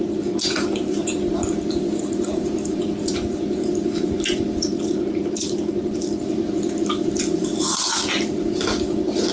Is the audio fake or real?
fake